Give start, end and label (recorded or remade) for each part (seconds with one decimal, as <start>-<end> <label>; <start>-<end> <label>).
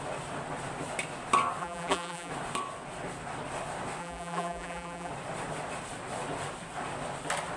0.0-1.6 recorded; 1.6-2.3 remade; 2.3-4.0 recorded; 4.0-5.1 remade; 5.1-7.6 recorded